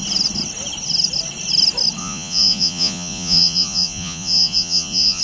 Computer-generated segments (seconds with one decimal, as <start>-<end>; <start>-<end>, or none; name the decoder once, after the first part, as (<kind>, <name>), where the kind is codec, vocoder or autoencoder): 2.0-5.2 (vocoder, Vocos)